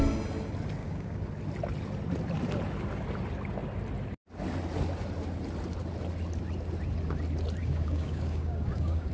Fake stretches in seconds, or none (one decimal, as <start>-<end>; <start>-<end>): 0.8-1.3; 7.6-9.1